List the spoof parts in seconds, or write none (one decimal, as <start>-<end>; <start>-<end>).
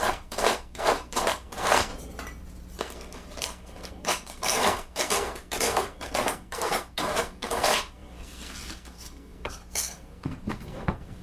0.0-1.9; 2.8-11.2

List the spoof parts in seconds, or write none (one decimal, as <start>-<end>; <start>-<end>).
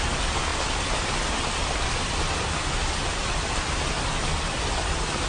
none